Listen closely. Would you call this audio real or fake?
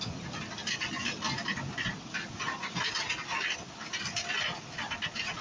real